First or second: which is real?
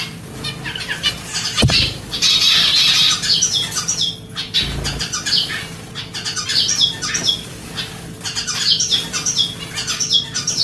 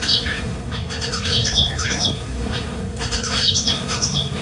first